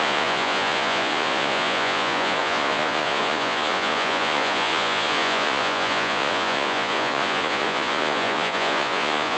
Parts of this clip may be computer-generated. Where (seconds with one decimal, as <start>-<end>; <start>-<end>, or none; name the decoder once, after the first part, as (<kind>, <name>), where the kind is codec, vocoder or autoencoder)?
0.0-9.4 (vocoder, Vocos)